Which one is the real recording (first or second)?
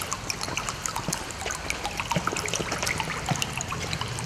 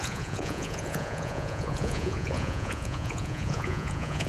first